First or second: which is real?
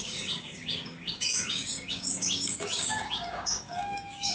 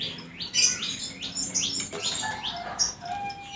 second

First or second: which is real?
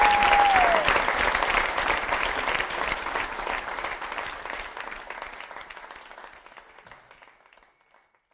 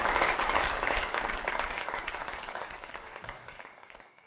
first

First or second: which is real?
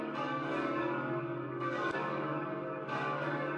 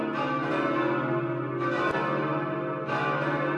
second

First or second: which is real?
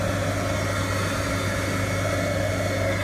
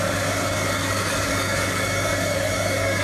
first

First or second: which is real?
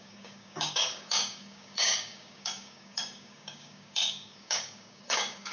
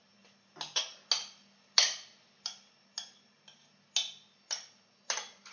second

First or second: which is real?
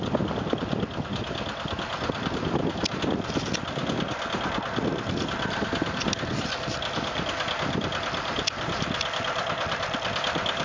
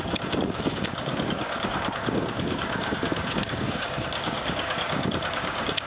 first